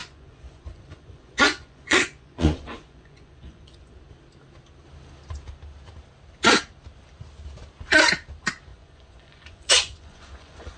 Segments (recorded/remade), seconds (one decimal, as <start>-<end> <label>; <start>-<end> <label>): 0.0-4.0 remade; 4.0-8.7 recorded; 8.7-10.8 remade